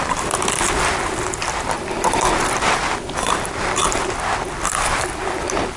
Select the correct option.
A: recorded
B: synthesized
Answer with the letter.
B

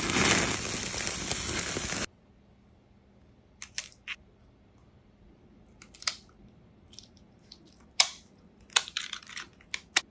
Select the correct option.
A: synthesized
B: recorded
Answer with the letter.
B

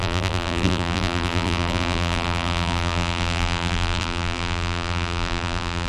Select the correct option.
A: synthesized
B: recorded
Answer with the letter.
A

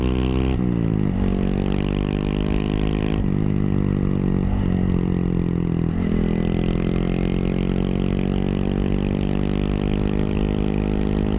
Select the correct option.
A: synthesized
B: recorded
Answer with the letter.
B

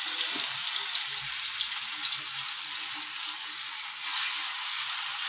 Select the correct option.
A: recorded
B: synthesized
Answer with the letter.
A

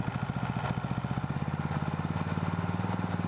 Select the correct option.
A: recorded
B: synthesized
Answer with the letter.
A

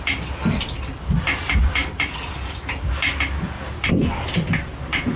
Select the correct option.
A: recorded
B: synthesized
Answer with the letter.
A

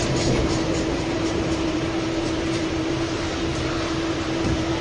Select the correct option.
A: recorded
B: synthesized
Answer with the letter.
B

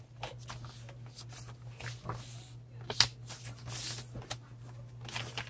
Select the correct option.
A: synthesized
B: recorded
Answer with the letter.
B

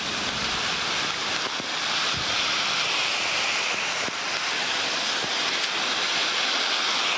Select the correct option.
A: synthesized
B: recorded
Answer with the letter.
B